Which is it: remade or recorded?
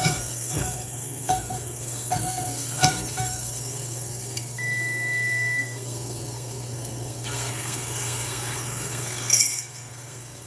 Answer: remade